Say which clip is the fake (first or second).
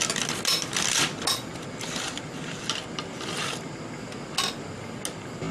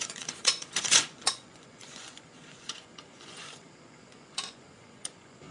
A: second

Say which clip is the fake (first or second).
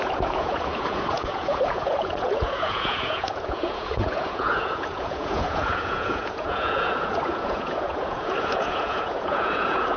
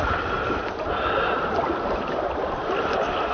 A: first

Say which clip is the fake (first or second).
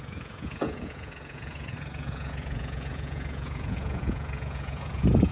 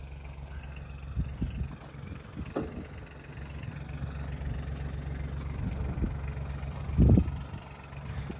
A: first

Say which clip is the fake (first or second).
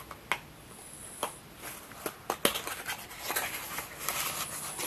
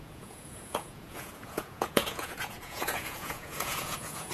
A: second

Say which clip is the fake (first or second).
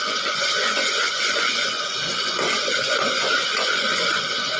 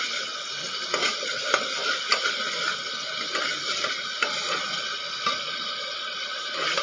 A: first